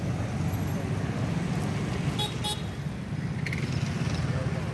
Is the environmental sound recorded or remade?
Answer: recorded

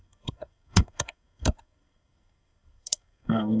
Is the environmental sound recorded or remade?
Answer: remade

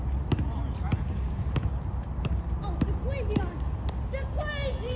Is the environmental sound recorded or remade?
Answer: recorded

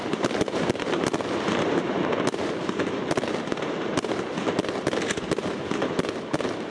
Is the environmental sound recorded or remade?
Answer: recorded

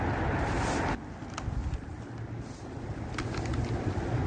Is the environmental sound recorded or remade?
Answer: recorded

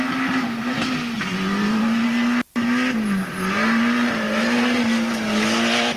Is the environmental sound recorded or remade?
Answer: recorded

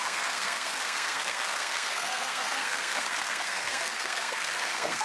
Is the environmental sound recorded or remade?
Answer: remade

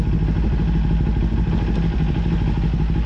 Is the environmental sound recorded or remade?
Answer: recorded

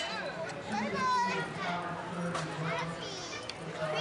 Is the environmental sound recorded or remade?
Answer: recorded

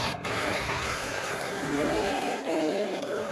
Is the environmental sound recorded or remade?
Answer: remade